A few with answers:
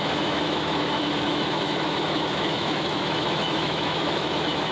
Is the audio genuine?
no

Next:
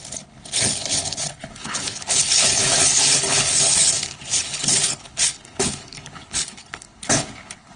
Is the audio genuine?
no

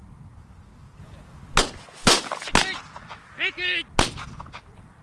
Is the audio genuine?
yes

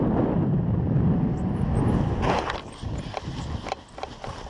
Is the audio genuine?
yes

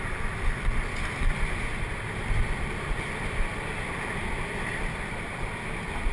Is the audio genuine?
yes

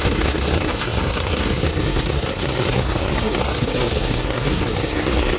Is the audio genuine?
no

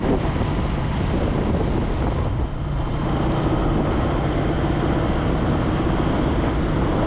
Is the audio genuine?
yes